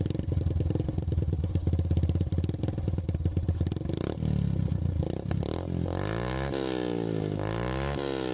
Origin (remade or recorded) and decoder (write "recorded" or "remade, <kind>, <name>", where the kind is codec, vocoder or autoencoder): recorded